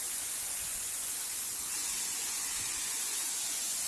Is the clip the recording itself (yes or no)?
no